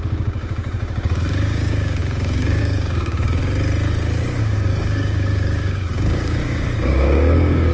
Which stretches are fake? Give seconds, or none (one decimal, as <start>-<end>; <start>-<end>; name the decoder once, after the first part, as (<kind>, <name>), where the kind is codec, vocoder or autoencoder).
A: 0.0-3.4 (codec, DAC); 4.4-7.7